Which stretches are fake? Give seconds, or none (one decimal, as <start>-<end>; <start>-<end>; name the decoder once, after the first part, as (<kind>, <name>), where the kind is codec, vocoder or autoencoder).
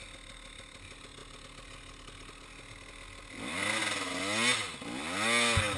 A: none